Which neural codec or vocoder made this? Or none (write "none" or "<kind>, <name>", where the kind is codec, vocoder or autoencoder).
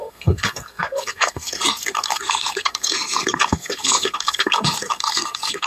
codec, SNAC